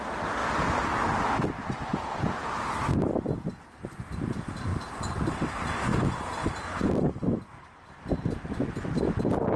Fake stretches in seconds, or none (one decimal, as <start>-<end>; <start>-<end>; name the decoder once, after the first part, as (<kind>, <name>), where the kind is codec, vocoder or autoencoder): 1.9-2.5 (vocoder, Vocos)